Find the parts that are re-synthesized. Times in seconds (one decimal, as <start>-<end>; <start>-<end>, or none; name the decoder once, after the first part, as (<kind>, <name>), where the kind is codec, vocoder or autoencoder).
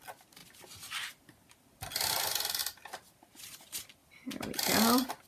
none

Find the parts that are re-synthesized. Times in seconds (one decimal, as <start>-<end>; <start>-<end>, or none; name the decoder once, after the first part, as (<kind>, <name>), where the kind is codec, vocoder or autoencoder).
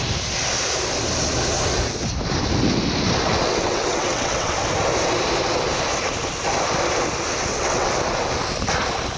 3.3-4.5 (vocoder, WaveNeXt); 7.5-8.0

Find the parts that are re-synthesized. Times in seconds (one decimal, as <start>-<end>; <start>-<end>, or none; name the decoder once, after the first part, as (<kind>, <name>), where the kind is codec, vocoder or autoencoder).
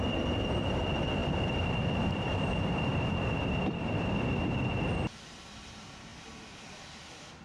1.2-5.6 (vocoder, BigVGAN v2)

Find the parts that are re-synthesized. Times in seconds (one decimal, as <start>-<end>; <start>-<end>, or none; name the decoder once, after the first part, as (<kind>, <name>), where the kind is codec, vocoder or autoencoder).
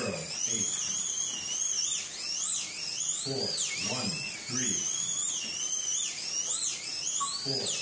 none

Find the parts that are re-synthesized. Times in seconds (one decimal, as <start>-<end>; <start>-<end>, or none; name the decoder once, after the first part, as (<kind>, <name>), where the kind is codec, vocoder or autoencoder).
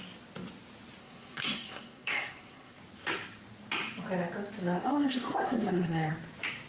1.0-2.8 (codec, SNAC); 4.6-6.1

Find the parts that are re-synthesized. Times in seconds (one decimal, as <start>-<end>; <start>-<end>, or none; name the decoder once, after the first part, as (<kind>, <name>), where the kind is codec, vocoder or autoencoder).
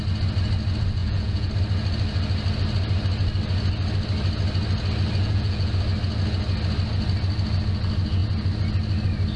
1.0-1.5 (vocoder, Vocos); 5.2-5.7